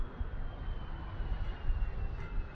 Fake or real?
real